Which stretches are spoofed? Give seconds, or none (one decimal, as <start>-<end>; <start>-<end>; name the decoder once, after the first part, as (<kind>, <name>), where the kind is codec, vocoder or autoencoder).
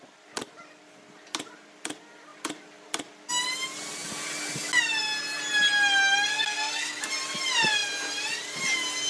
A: 6.3-7.0 (codec, SNAC)